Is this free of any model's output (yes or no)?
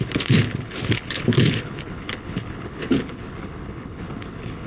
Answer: no